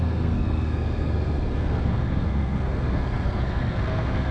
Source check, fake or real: fake